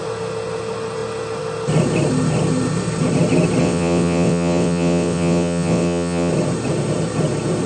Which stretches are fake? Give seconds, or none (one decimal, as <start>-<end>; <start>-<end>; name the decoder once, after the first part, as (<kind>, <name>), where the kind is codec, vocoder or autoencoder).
3.6-6.3 (vocoder, WaveNeXt)

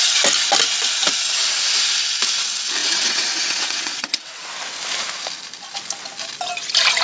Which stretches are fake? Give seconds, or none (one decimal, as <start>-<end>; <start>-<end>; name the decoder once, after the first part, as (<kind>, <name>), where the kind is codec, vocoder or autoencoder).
2.8-4.5 (vocoder, WaveNeXt)

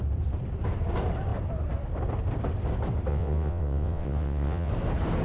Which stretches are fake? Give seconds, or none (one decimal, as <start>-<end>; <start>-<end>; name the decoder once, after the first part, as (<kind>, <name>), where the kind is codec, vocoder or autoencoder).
3.1-4.7 (vocoder, WaveNeXt)

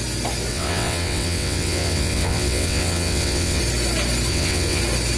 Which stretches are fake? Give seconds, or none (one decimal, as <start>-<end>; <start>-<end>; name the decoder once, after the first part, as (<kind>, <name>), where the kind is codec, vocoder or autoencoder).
0.5-3.6 (vocoder, WaveNeXt); 4.3-4.8